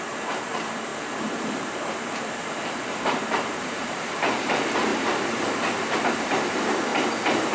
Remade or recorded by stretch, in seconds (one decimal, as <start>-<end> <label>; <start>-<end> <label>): 0.0-4.9 remade; 4.9-6.1 recorded; 6.1-6.9 remade; 6.9-7.5 recorded